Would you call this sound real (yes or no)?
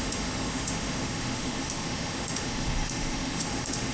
no